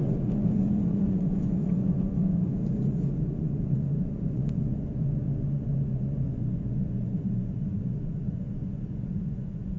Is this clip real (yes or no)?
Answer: no